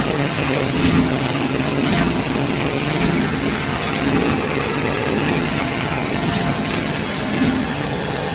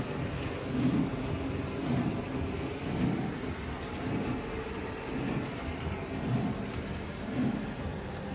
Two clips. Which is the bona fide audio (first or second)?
second